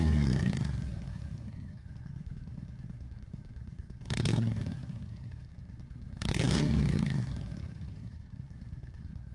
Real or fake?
fake